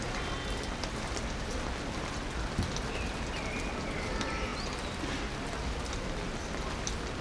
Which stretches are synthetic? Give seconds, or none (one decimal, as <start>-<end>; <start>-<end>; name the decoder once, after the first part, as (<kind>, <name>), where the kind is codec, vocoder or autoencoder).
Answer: none

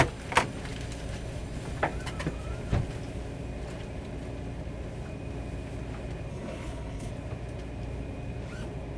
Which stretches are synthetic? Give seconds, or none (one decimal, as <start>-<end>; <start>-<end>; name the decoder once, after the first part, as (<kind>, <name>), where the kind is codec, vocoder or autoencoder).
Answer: 6.3-7.1 (codec, HILCodec)

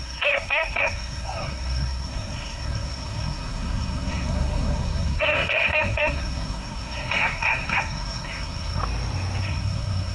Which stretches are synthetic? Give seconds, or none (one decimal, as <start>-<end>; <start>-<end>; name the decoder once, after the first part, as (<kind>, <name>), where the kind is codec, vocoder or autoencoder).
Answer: 0.0-8.8 (codec, SNAC); 9.4-10.1

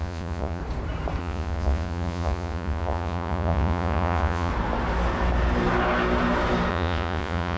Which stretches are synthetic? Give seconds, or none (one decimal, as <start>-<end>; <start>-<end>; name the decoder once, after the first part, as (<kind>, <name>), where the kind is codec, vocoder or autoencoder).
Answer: 0.0-0.6 (vocoder, Vocos); 1.2-4.5; 6.7-7.6

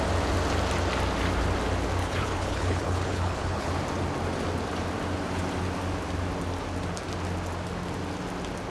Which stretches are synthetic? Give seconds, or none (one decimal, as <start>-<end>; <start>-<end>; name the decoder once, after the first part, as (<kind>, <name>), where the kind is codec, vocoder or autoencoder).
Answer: 2.0-3.7 (codec, HILCodec)